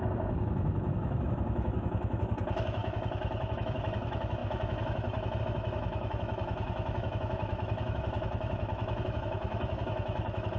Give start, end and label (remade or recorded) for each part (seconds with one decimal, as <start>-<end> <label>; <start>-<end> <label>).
0.0-10.6 remade